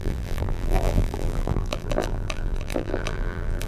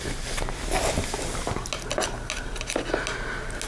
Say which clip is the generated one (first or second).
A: first